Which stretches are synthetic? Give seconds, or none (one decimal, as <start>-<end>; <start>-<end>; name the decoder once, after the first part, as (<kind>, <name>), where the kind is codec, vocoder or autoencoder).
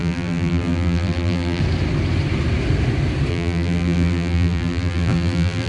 0.0-1.6 (vocoder, BigVGAN v2); 3.3-5.7